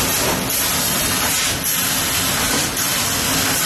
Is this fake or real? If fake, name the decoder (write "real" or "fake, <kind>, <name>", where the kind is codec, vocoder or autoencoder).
real